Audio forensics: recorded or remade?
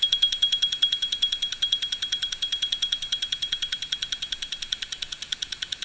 recorded